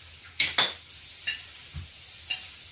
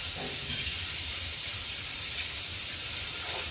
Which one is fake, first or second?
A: second